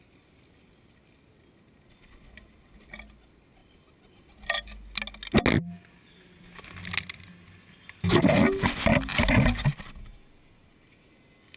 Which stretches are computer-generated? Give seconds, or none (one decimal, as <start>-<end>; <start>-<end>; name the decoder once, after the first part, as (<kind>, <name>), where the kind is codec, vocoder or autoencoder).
none